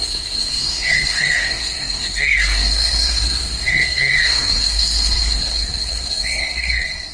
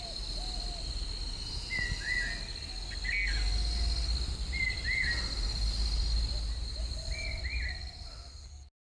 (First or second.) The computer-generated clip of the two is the first